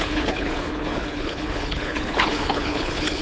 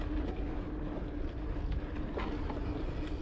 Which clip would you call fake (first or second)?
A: first